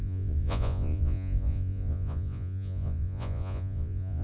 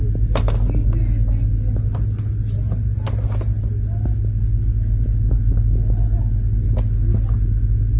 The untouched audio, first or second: second